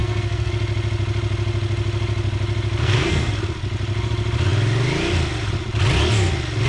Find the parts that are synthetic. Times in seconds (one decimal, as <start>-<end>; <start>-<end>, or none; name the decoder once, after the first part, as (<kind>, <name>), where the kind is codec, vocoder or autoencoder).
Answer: 0.0-0.5 (codec, SNAC); 2.8-3.3